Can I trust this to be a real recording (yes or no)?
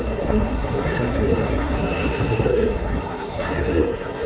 no